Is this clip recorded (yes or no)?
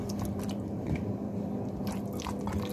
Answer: yes